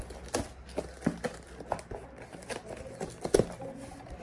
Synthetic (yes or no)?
no